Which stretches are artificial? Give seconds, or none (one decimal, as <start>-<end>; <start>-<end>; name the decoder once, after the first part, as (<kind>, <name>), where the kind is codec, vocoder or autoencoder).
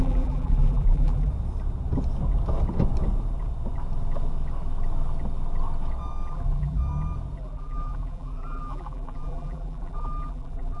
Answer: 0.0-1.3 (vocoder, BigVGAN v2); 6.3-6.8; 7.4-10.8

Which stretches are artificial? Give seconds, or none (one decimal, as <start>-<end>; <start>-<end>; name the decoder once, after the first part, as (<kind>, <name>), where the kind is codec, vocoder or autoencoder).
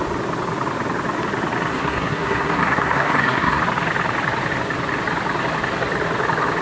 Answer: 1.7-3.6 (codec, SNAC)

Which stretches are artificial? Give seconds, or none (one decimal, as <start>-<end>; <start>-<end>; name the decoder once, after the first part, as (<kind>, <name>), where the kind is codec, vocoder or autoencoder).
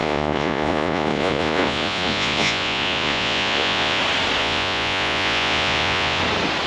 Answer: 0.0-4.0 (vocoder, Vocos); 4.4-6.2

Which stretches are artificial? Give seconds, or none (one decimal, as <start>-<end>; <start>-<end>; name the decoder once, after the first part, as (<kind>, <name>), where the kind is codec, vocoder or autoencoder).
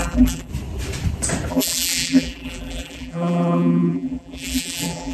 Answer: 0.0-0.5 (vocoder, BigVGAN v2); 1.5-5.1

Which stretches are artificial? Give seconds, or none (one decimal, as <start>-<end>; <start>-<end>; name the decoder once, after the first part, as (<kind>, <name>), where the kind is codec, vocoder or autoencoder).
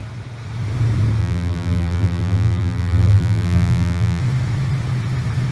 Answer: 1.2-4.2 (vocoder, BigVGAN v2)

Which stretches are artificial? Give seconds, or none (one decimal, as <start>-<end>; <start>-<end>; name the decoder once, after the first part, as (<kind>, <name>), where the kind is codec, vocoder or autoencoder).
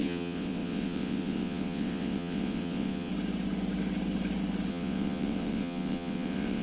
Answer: 0.0-3.1 (vocoder, WaveNeXt); 4.7-6.6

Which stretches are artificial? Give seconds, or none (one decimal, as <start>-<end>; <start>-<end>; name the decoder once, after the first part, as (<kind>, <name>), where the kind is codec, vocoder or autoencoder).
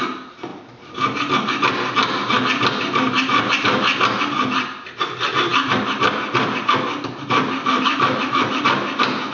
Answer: 7.6-8.6 (autoencoder, DAC-VAE)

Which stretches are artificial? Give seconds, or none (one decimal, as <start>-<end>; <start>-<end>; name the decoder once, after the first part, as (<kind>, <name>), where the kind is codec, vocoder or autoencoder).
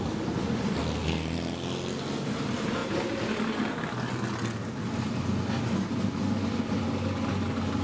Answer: none